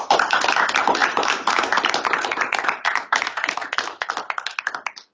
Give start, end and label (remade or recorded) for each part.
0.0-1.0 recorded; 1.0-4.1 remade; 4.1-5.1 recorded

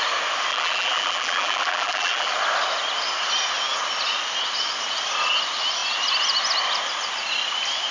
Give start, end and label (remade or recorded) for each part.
0.0-0.5 recorded; 0.5-2.3 remade; 2.3-7.9 recorded